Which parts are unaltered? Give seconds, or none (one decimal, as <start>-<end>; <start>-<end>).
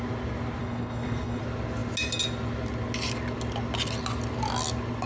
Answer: 0.0-0.6; 1.4-5.1